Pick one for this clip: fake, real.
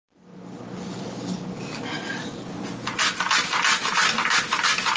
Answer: real